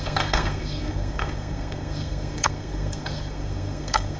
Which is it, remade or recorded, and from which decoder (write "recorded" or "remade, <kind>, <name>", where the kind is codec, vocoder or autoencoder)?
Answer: remade, codec, SNAC